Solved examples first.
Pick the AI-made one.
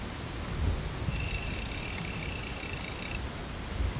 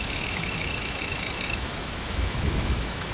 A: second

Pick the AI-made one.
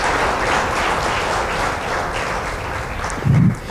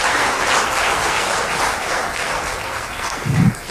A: second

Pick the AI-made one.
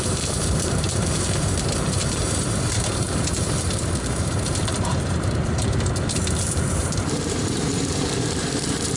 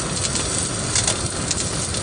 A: first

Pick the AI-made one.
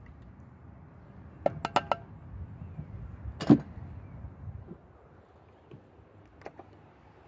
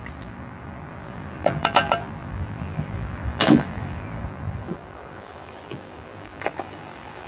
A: second